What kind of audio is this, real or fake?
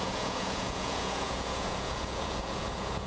fake